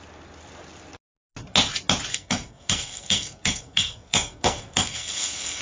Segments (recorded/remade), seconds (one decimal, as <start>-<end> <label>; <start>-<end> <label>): 0.0-2.1 recorded; 2.1-5.6 remade